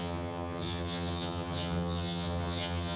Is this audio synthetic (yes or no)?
yes